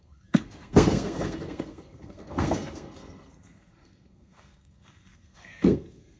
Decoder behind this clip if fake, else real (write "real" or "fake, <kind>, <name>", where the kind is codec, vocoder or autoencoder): fake, codec, SNAC